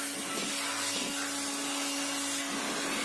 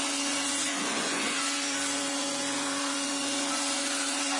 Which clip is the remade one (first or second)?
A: second